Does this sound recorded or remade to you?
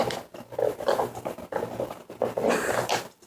recorded